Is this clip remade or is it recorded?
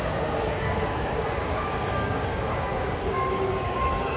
remade